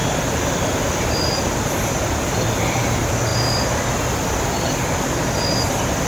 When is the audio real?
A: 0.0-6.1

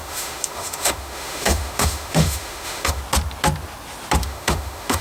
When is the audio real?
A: 3.0-4.2

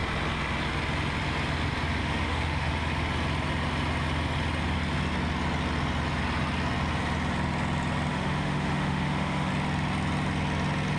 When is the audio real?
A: 0.0-2.0; 2.7-8.1; 9.5-11.0

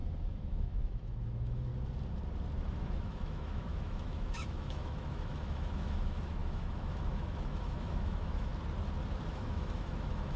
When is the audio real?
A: 1.7-2.7; 8.5-9.3

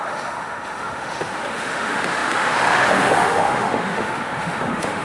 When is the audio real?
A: none

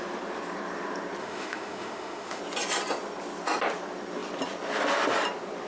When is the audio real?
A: 0.0-1.2; 2.4-5.7